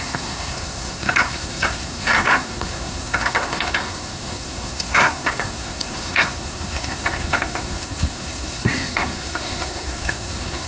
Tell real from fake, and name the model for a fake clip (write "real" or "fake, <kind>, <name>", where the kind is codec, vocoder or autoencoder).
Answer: fake, codec, SNAC